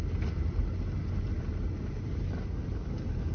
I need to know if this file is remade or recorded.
recorded